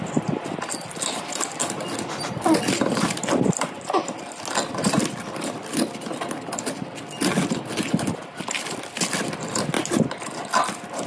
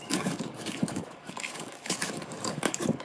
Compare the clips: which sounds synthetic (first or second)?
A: second